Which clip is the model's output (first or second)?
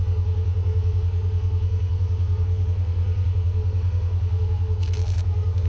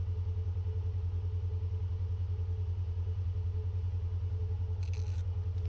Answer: first